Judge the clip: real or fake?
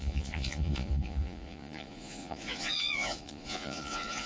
fake